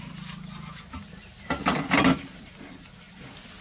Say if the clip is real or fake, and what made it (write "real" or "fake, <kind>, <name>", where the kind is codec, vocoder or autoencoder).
real